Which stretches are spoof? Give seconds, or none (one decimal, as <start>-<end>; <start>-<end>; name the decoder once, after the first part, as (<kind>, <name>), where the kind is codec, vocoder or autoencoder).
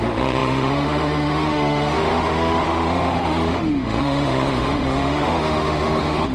0.0-6.3 (autoencoder, DAC-VAE)